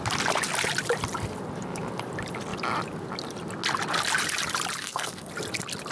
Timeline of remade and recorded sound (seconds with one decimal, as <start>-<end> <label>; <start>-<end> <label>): 0.0-4.8 recorded; 4.8-5.3 remade; 5.3-5.9 recorded